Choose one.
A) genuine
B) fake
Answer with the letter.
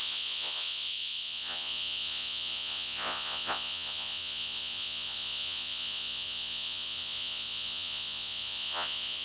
B